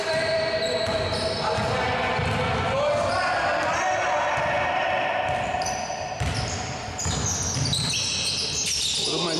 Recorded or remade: recorded